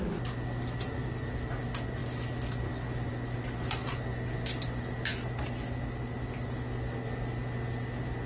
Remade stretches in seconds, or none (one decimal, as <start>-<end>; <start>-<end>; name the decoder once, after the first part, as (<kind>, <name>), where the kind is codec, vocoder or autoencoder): none

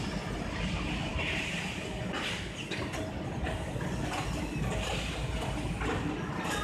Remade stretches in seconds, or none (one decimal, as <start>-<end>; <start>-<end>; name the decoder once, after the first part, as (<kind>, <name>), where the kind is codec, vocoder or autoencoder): none